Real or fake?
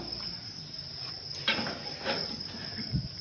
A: real